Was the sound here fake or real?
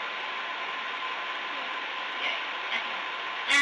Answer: real